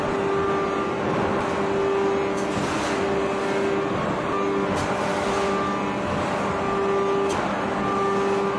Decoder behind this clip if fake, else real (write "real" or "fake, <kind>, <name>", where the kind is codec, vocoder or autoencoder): real